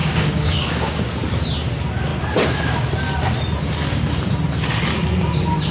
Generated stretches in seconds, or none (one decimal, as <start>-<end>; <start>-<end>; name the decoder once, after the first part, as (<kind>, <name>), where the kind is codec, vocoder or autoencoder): 0.0-1.2 (codec, DAC)